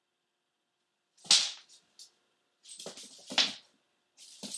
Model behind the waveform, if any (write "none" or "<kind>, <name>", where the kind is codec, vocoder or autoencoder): none